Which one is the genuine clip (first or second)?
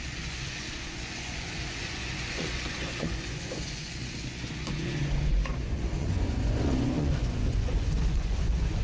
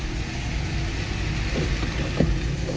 second